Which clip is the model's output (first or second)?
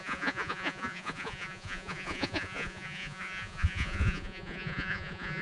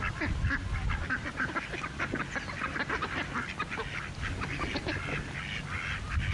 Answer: first